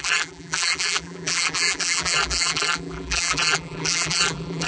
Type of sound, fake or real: fake